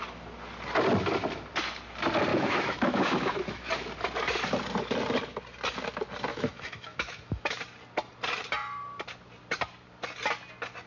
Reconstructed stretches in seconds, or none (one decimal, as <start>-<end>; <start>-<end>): 2.3-3.7; 6.3-7.6